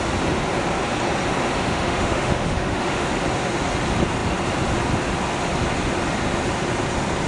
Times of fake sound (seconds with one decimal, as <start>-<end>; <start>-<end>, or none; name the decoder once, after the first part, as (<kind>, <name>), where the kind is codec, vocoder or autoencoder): 1.6-3.1 (autoencoder, DAC-VAE)